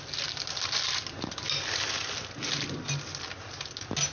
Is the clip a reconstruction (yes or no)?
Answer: no